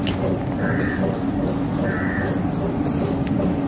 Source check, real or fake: real